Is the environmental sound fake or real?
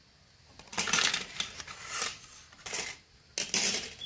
real